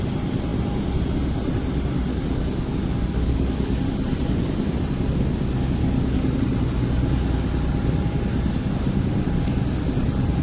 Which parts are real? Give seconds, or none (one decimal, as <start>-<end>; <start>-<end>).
0.0-2.1; 3.8-5.8; 6.4-10.4